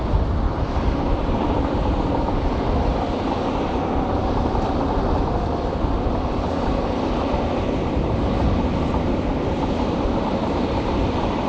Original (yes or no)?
no